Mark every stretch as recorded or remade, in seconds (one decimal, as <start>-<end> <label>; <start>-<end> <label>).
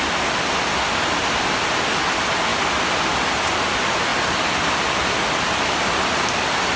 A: 0.0-6.8 recorded